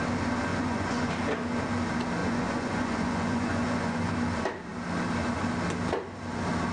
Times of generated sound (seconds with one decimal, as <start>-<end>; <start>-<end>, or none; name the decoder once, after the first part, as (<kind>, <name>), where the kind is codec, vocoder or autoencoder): 0.5-1.1 (vocoder, Vocos); 2.2-4.1